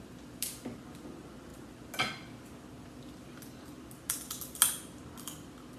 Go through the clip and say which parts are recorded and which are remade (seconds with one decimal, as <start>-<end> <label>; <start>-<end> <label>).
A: 0.0-5.8 recorded